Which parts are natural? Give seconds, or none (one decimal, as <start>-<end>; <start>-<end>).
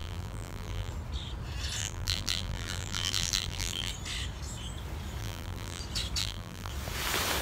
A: 0.9-1.8; 3.9-5.2; 5.8-6.2; 6.7-7.4